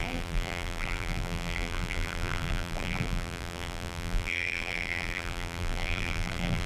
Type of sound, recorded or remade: remade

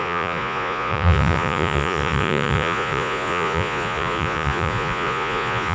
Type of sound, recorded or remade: remade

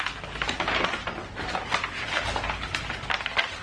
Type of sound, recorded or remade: recorded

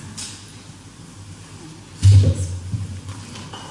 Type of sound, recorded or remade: recorded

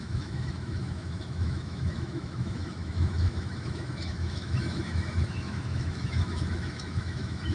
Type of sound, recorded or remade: remade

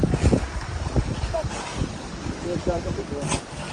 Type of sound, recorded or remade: recorded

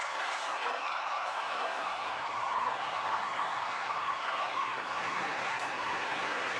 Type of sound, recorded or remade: remade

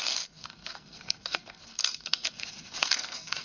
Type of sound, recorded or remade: remade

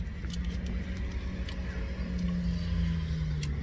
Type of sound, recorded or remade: recorded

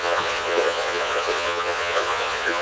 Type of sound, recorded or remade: remade